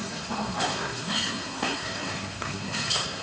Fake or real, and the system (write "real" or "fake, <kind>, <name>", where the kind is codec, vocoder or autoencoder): fake, codec, SNAC